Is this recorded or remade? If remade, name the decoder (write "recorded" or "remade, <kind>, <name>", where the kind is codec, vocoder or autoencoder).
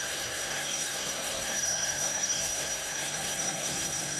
remade, codec, SNAC